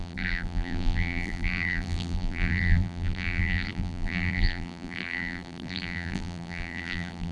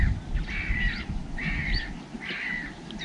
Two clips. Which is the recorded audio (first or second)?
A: second